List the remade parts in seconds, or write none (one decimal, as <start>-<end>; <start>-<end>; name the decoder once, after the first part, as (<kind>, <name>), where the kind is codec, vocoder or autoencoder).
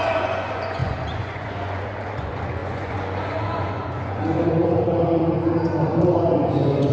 0.0-6.9 (vocoder, Vocos)